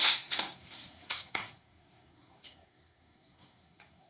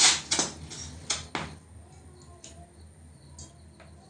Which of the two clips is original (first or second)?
second